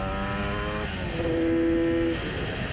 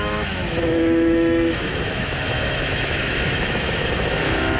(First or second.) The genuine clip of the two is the first